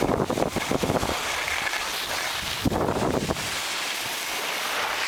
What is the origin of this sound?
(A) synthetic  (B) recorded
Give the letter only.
B